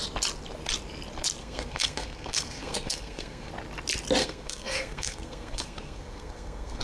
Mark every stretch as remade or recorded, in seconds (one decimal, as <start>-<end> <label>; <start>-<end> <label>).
0.0-1.4 recorded; 1.4-3.5 remade; 3.5-4.2 recorded; 4.2-6.8 remade